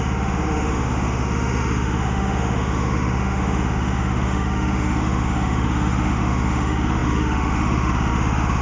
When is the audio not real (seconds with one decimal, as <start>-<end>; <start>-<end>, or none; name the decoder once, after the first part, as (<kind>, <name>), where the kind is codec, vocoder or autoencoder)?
0.0-8.6 (autoencoder, DAC-VAE)